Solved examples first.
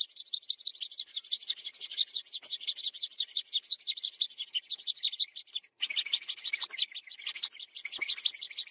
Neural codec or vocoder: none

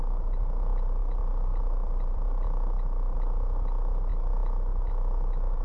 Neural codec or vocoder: none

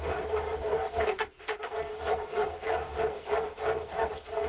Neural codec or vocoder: codec, SNAC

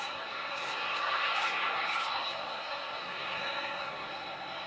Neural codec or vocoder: codec, SNAC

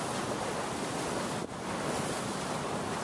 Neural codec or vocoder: none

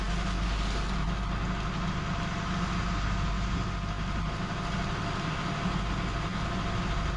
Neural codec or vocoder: none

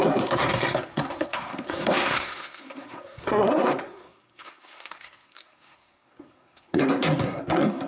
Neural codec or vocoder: codec, SNAC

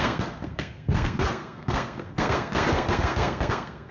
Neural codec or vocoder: codec, SNAC